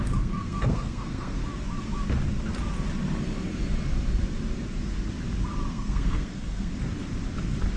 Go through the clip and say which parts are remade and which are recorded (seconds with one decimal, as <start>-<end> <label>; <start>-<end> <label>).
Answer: 0.0-1.4 remade; 1.4-5.7 recorded; 5.7-6.7 remade; 6.7-7.8 recorded